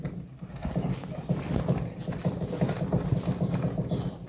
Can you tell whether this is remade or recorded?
recorded